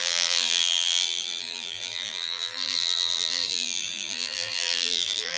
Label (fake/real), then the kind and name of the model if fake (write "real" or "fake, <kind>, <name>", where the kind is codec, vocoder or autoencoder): fake, vocoder, BigVGAN v2